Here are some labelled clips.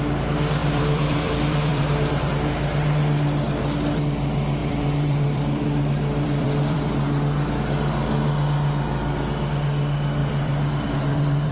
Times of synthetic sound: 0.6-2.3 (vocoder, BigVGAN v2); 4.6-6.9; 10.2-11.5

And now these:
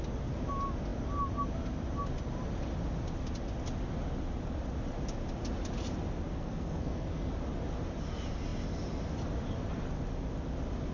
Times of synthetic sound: 6.3-7.3 (codec, SNAC)

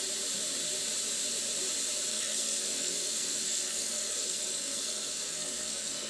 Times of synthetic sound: 2.1-6.1 (codec, SNAC)

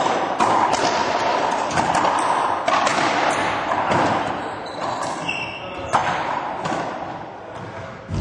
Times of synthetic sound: 1.0-1.6 (vocoder, BigVGAN v2); 6.0-7.1

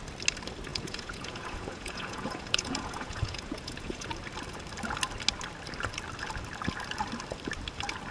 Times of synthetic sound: 0.7-4.1 (vocoder, Vocos)

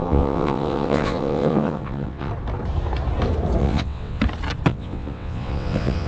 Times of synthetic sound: 0.0-2.3 (vocoder, WaveNeXt); 3.6-4.2; 4.7-6.1

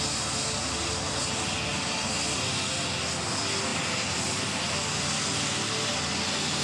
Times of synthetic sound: 3.7-4.6 (vocoder, BigVGAN v2)